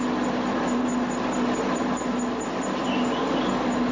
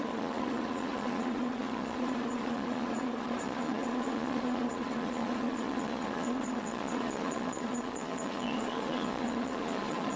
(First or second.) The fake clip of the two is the second